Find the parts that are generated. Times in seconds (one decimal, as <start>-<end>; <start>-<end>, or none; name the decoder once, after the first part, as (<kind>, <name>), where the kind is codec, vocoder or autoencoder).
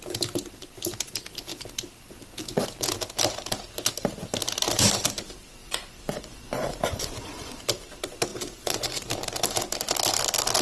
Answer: 5.6-7.5 (vocoder, Vocos); 8.3-9.1